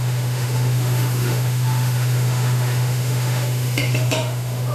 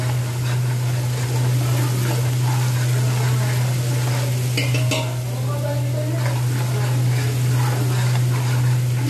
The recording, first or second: second